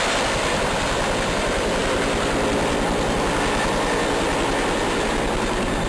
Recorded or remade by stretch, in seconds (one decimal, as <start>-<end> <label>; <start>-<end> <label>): 0.0-5.9 recorded